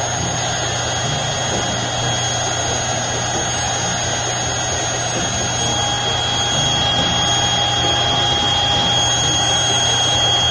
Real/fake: real